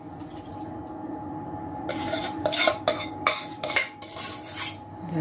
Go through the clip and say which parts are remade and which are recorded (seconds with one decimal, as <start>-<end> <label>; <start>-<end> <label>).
0.0-1.9 recorded; 1.9-4.0 remade; 4.0-5.2 recorded